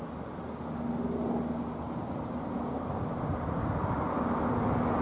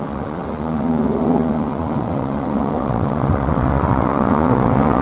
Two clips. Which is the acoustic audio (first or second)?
first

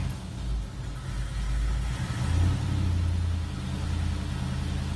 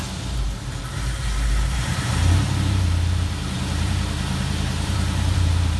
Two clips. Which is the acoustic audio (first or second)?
first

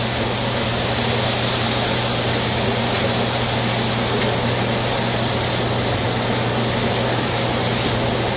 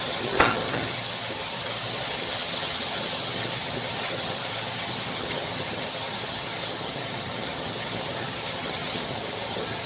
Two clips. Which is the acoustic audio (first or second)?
first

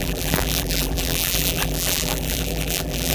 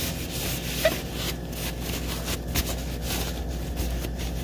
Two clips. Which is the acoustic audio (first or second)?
second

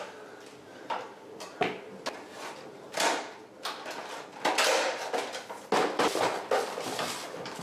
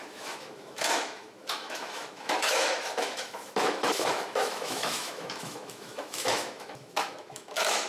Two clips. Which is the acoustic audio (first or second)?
first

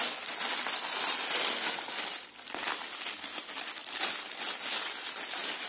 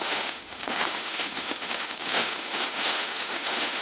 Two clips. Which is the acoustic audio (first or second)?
first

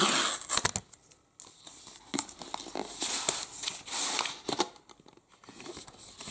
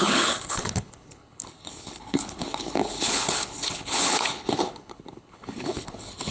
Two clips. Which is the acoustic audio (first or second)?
first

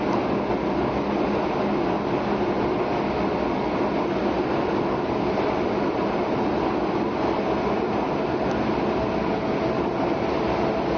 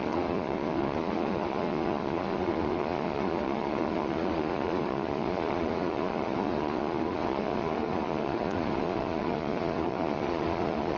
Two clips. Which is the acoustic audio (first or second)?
first